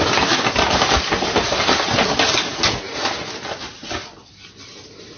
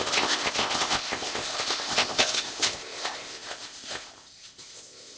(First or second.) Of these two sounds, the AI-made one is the second